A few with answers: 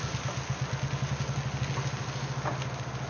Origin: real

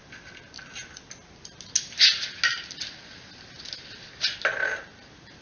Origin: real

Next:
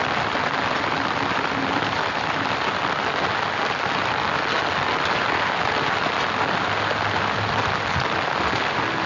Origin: real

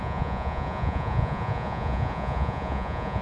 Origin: fake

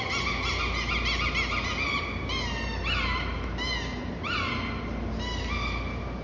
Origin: real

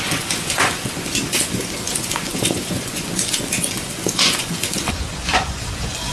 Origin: fake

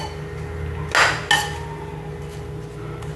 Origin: real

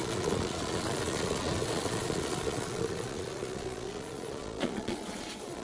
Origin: fake